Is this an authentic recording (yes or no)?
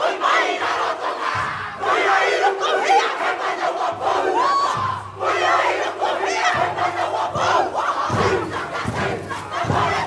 yes